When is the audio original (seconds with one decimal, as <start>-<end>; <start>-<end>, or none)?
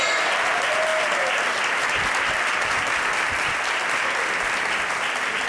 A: 0.0-5.5